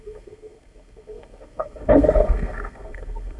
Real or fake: fake